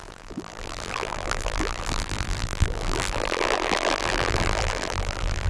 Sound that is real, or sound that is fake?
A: fake